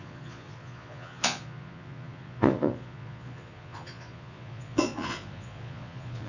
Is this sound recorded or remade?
remade